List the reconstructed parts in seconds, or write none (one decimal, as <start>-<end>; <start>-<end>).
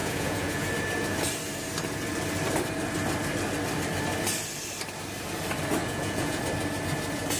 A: 0.0-0.7; 5.8-6.4